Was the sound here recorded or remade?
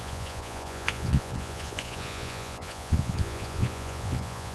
remade